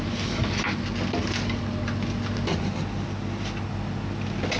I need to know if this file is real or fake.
real